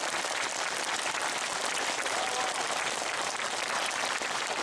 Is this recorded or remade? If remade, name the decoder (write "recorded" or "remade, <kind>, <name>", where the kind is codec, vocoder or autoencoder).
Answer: recorded